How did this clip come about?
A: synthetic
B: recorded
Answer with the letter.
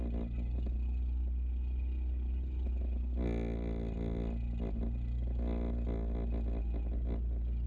B